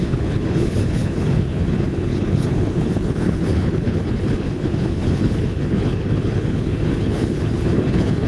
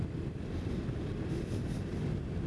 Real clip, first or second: second